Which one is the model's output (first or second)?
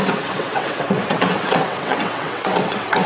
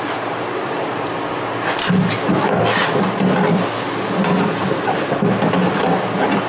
first